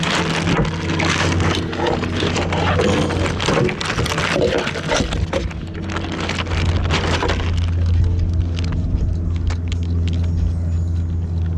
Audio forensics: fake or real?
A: real